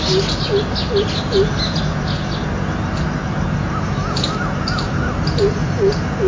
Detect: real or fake real